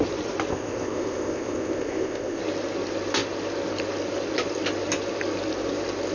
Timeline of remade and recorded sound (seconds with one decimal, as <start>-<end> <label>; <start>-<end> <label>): 0.0-0.5 recorded; 0.5-2.4 remade; 2.4-6.1 recorded